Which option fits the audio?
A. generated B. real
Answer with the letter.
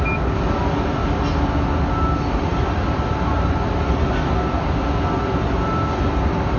B